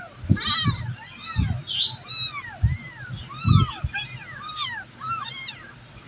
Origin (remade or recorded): recorded